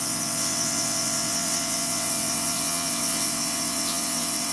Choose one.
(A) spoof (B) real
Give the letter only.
A